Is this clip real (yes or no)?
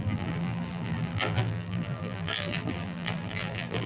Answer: no